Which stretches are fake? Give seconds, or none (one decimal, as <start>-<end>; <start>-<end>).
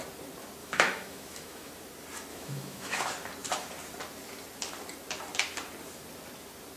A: 0.6-1.7; 2.3-3.0